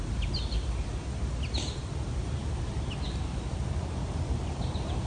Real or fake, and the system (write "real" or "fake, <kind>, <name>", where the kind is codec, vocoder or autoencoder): real